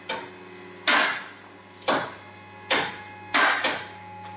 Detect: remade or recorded recorded